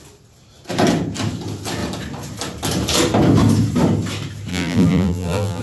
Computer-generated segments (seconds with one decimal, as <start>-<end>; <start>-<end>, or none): 4.5-5.6